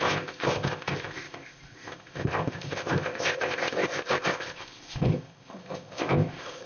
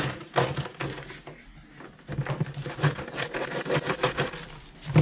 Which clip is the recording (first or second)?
second